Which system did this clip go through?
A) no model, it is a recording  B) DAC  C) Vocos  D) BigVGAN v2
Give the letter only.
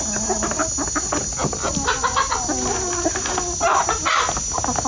A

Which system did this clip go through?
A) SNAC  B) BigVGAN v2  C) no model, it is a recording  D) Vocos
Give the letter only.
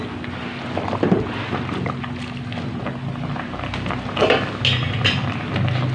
C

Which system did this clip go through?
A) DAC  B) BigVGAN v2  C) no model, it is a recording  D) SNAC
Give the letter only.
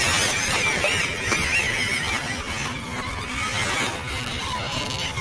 C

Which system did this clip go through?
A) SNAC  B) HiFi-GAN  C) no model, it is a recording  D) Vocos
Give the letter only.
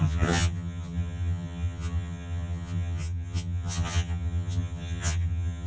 B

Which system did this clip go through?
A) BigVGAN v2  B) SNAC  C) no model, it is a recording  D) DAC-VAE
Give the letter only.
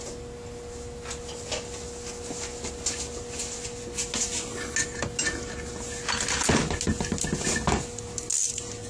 C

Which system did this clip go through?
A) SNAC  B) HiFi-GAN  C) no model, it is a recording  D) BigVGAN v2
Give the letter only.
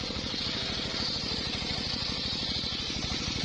C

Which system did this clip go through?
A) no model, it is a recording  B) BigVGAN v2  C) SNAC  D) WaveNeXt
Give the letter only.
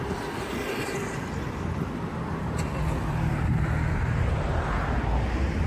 A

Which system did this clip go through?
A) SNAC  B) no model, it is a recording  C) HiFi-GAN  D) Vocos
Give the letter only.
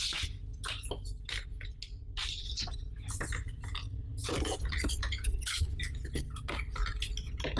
B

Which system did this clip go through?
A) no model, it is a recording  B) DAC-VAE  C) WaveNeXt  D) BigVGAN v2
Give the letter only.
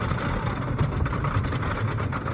A